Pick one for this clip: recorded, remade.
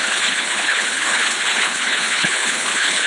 remade